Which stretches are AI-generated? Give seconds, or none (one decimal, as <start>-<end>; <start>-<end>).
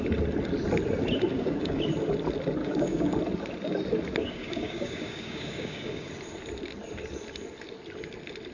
1.3-1.8; 2.6-3.2; 4.2-6.1